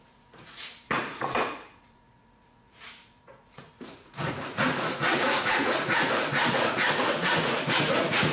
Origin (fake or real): fake